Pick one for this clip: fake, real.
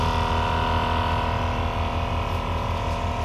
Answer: real